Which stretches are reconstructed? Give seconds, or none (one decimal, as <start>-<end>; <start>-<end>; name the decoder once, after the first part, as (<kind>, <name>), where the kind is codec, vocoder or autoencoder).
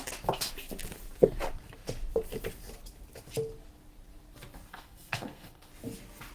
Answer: 4.7-5.7 (codec, SNAC)